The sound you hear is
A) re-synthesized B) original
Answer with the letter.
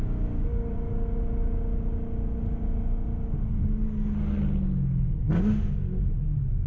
B